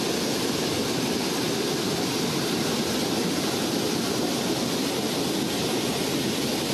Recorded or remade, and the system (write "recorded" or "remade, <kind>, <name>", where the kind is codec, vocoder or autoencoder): recorded